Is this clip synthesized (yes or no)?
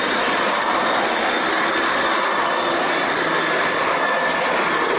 no